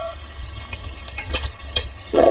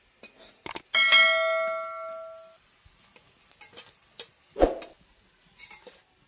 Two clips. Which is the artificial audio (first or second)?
first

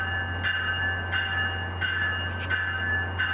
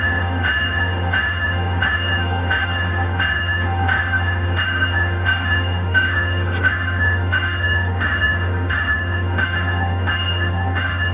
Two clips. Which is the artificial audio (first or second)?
second